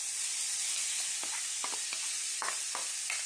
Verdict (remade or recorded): recorded